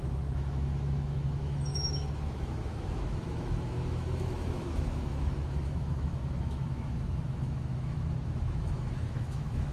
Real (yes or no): no